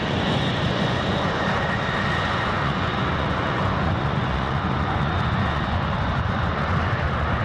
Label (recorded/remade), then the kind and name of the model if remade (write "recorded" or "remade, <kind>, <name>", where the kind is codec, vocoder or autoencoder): remade, vocoder, Vocos